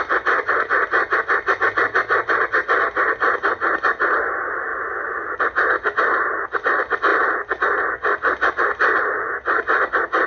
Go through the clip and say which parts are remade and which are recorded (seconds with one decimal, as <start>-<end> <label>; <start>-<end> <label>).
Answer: 0.0-10.3 recorded

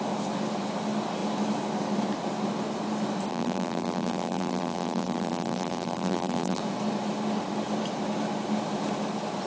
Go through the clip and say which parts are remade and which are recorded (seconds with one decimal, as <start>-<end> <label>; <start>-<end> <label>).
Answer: 0.0-3.3 recorded; 3.3-6.6 remade; 6.6-9.5 recorded